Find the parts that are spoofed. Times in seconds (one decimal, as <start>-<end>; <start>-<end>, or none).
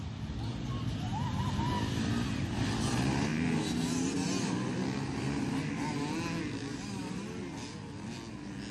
none